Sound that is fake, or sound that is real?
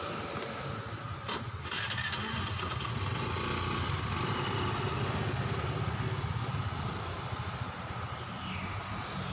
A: real